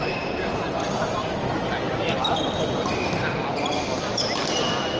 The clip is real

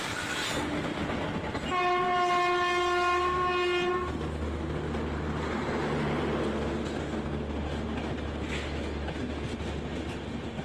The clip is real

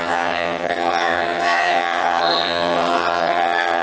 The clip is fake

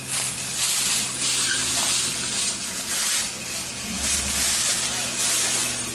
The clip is real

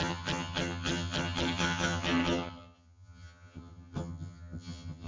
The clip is fake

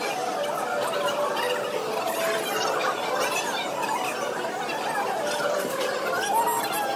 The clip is real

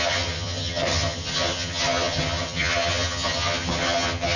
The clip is fake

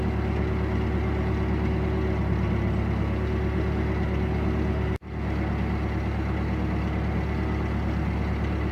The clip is real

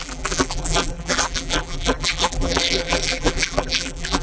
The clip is fake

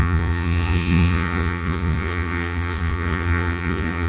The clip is fake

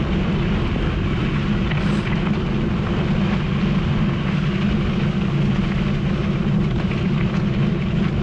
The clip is real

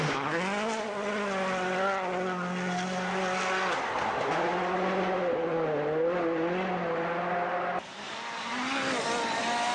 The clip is real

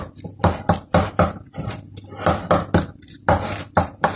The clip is real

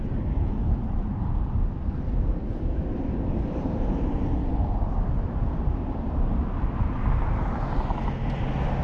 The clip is real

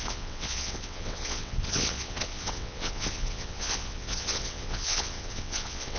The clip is fake